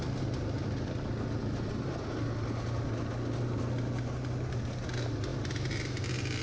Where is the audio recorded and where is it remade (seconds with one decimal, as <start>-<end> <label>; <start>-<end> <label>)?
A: 0.0-6.4 recorded